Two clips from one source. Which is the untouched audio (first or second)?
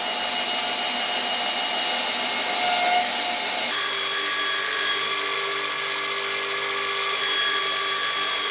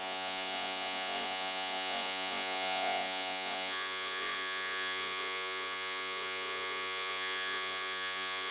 first